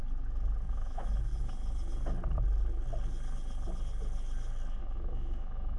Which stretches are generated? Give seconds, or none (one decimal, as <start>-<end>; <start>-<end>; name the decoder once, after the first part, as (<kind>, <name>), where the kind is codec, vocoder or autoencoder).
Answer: 0.7-1.3 (autoencoder, DAC-VAE); 4.8-5.8